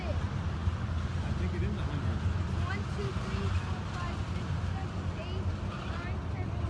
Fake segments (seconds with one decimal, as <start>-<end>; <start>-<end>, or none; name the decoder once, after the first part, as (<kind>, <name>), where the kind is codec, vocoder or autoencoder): none